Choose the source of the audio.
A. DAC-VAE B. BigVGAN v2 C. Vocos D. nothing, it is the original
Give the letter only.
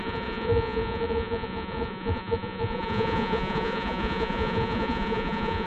C